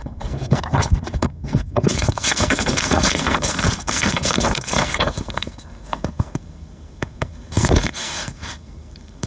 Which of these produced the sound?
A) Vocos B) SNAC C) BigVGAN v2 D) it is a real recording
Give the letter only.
B